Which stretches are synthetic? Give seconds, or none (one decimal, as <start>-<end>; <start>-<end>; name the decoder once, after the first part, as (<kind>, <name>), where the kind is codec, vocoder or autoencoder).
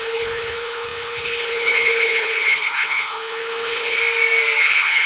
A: 0.0-4.0 (codec, HILCodec); 4.6-5.1